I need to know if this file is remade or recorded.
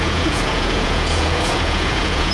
remade